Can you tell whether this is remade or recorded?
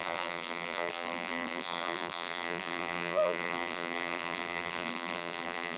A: remade